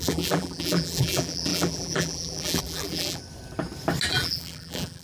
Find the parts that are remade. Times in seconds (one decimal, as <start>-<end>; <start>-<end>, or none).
0.0-3.2; 4.1-5.0